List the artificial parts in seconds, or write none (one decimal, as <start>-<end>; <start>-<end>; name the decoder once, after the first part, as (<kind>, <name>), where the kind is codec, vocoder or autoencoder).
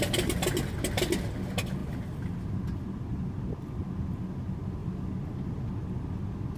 1.8-2.5 (vocoder, BigVGAN v2)